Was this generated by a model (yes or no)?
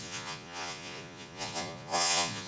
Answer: yes